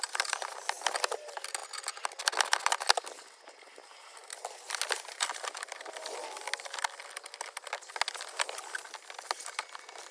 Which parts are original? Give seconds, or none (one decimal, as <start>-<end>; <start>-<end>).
0.0-10.1